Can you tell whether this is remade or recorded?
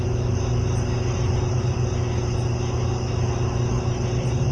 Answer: recorded